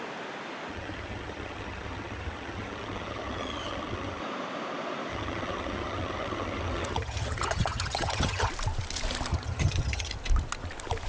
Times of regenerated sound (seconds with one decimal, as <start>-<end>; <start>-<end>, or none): 0.7-4.2; 5.1-8.5; 9.3-10.1